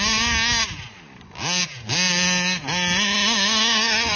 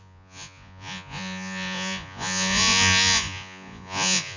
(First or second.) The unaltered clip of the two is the first